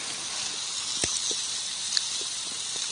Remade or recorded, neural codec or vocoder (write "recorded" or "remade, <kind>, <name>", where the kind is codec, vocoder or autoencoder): recorded